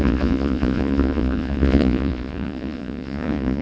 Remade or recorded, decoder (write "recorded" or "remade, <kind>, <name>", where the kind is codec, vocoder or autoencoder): remade, vocoder, Vocos